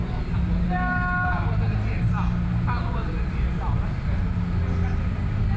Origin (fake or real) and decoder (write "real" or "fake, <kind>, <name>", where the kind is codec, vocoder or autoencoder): real